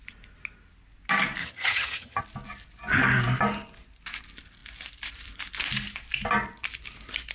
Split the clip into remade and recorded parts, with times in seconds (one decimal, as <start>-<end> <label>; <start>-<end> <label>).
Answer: 0.0-1.4 recorded; 1.4-2.2 remade; 2.2-7.3 recorded